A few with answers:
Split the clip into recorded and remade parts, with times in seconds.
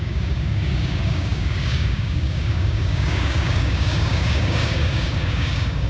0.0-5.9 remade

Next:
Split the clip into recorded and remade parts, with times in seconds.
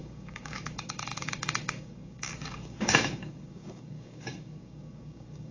0.0-5.5 remade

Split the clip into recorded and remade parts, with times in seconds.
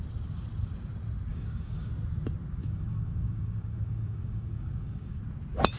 0.0-1.3 recorded; 1.3-1.9 remade; 1.9-2.6 recorded; 2.6-5.2 remade; 5.2-5.8 recorded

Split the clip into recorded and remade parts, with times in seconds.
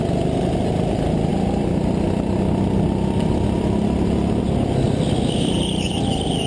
0.0-6.5 recorded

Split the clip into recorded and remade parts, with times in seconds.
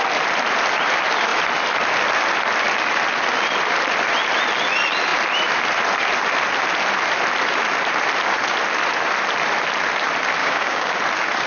0.0-10.4 recorded; 10.4-11.0 remade; 11.0-11.5 recorded